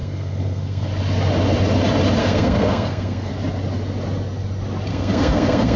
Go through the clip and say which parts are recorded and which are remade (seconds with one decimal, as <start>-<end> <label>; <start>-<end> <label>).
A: 0.0-0.9 remade; 0.9-2.2 recorded; 2.2-3.3 remade; 3.3-4.9 recorded; 4.9-5.8 remade